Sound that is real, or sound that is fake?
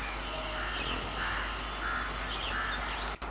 real